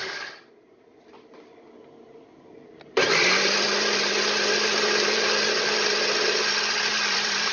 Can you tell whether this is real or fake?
fake